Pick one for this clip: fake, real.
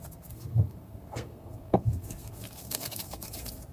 fake